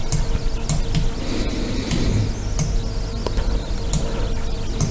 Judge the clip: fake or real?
real